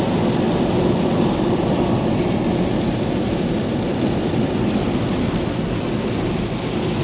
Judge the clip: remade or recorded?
recorded